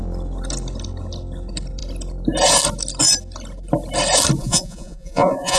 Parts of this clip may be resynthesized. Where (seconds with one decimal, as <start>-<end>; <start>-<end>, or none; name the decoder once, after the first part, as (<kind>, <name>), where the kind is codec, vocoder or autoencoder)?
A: 4.4-5.6 (vocoder, Vocos)